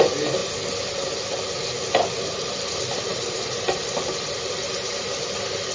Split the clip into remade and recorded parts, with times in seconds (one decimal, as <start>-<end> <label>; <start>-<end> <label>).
0.0-5.7 recorded